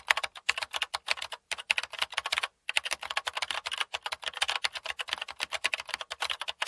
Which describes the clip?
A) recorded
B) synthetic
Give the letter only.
A